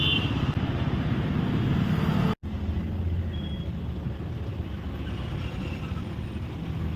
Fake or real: real